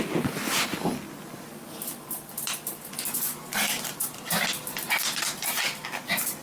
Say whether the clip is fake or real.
real